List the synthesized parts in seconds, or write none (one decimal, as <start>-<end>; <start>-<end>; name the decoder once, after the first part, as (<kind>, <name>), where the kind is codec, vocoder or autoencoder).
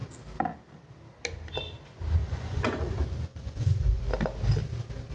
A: 2.2-2.9 (vocoder, Vocos); 3.3-4.0